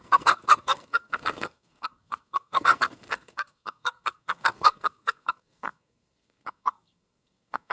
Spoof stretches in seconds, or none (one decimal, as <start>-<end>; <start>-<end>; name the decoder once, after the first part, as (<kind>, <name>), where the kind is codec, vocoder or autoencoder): 0.0-7.7 (codec, SNAC)